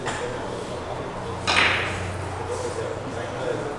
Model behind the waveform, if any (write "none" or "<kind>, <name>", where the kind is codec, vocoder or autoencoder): none